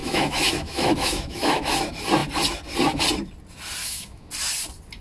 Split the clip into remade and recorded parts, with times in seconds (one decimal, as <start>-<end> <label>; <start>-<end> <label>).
0.0-1.8 remade; 1.8-3.8 recorded; 3.8-4.3 remade; 4.3-5.0 recorded